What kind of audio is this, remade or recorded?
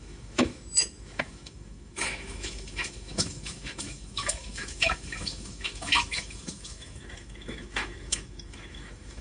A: remade